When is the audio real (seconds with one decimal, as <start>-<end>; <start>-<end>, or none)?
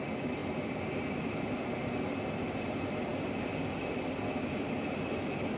0.0-5.6